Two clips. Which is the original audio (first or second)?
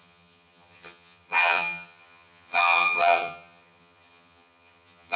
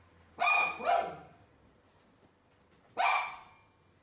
second